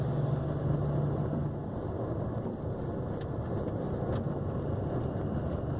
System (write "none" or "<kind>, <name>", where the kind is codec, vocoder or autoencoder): none